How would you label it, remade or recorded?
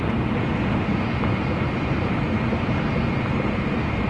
recorded